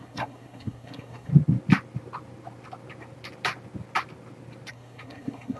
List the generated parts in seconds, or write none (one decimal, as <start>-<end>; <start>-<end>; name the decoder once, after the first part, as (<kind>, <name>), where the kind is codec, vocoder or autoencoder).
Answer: 0.0-1.3 (codec, SNAC); 4.7-5.6